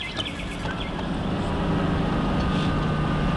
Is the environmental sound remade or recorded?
recorded